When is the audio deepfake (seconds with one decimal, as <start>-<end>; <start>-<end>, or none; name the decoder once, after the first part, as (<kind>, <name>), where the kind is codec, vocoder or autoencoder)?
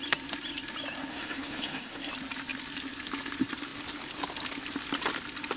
1.1-2.1 (codec, SNAC)